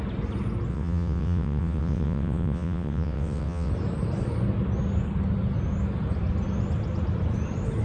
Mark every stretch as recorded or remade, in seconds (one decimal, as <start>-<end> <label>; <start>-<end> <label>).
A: 0.0-0.7 recorded; 0.7-3.7 remade; 3.7-7.8 recorded